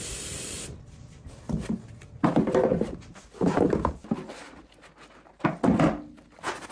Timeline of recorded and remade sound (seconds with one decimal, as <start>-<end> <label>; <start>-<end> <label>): 0.0-6.7 recorded